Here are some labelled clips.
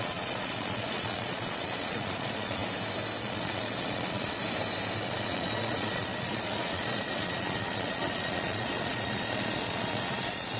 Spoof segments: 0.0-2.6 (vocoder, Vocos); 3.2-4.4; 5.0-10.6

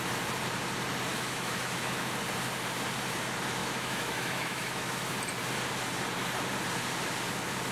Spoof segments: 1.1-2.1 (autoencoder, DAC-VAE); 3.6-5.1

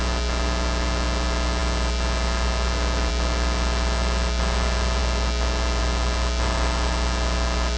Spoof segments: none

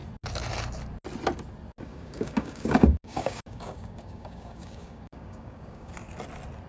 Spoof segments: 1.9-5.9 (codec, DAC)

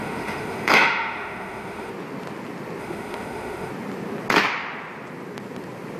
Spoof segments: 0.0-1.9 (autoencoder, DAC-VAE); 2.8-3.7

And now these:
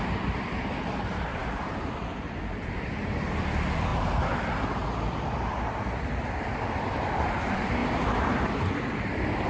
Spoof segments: 0.0-3.9 (vocoder, BigVGAN v2); 5.0-7.8; 8.3-9.5

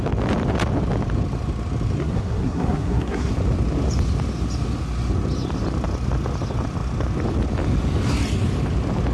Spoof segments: 2.0-3.3 (codec, SNAC)